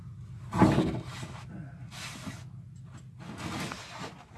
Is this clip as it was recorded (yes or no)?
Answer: yes